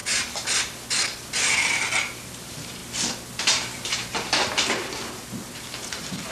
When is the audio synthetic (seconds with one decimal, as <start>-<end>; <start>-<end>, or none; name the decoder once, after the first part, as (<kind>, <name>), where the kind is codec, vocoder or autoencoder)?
1.5-6.3 (vocoder, BigVGAN v2)